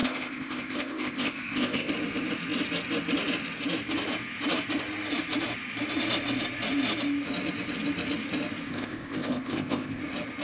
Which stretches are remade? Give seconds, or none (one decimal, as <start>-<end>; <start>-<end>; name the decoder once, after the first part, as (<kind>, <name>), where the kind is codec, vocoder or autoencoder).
0.0-1.9 (codec, ZipCodec); 8.7-10.0